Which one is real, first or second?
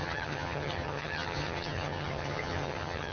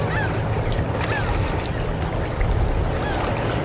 second